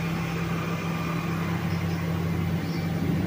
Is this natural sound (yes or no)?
yes